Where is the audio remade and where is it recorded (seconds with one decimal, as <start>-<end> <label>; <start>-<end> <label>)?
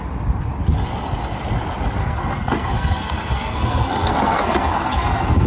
0.0-2.0 recorded; 2.0-5.5 remade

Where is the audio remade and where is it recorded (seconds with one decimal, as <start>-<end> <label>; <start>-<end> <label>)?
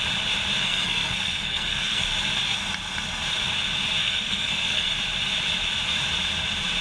0.0-0.6 recorded; 0.6-2.1 remade; 2.1-4.0 recorded; 4.0-4.9 remade; 4.9-6.8 recorded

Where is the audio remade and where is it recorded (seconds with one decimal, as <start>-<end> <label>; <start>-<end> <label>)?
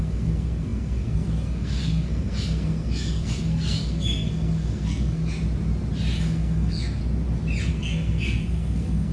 0.0-5.2 remade; 5.2-6.2 recorded; 6.2-7.0 remade; 7.0-7.7 recorded; 7.7-9.1 remade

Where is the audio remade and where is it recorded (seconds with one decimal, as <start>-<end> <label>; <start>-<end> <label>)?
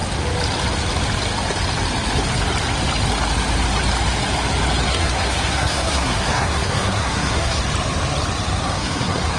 0.0-4.9 recorded; 4.9-7.6 remade; 7.6-8.6 recorded; 8.6-9.4 remade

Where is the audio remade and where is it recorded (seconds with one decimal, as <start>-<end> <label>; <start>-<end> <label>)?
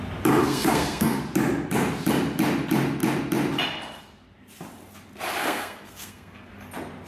0.0-0.4 recorded; 0.4-1.2 remade; 1.2-5.4 recorded; 5.4-6.5 remade; 6.5-7.1 recorded